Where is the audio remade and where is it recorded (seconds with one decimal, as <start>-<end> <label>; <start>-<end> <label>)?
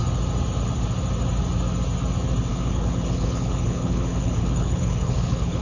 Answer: 0.0-2.5 recorded; 2.5-5.6 remade